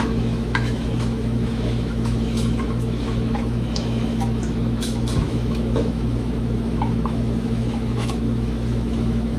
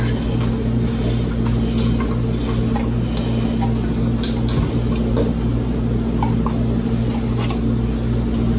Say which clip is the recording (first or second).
second